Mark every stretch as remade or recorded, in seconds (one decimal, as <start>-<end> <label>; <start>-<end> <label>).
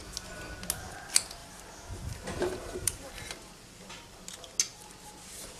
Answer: 0.0-1.4 recorded; 1.4-3.1 remade; 3.1-5.6 recorded